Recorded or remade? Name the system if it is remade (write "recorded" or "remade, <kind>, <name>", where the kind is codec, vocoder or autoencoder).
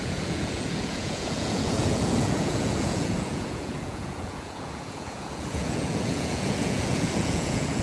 remade, vocoder, Vocos